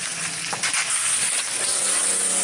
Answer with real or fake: real